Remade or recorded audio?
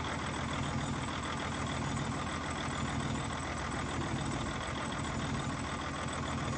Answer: recorded